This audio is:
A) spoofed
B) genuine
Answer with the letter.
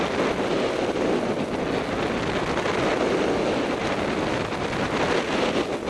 B